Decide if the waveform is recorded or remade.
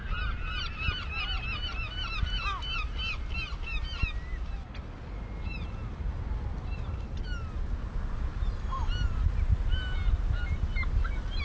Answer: recorded